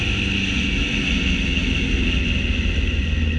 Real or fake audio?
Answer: real